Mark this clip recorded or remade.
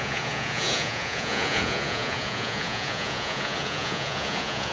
remade